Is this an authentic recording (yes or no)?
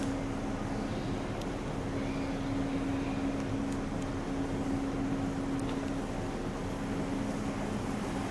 yes